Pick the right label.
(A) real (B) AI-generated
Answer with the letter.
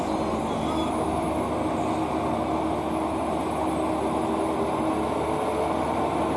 A